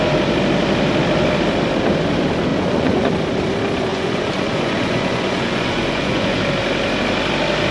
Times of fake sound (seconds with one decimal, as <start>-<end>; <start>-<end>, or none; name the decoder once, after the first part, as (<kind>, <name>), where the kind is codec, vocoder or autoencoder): 2.5-3.1 (vocoder, Vocos); 3.9-6.4